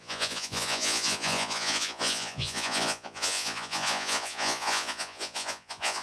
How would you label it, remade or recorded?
remade